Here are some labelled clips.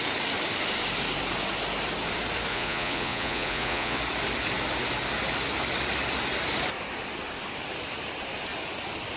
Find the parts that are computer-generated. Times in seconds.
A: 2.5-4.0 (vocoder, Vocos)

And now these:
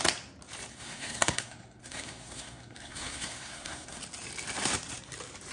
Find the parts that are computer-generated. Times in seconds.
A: 0.7-4.0 (codec, SNAC)

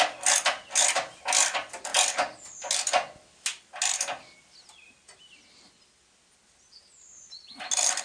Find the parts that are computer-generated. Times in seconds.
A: none

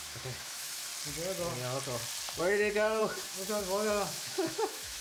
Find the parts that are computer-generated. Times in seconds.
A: 0.0-0.9 (autoencoder, DAC-VAE); 2.4-5.0

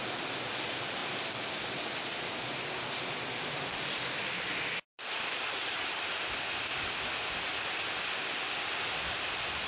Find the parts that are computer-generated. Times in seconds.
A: none

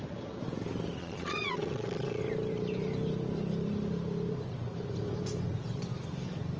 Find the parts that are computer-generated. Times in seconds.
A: 1.0-2.2 (vocoder, Vocos)

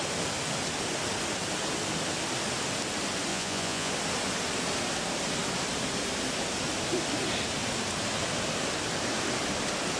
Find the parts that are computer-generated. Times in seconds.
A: 3.3-3.9 (vocoder, Vocos)

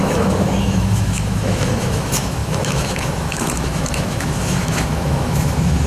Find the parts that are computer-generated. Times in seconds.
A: 0.0-5.9 (autoencoder, DAC-VAE)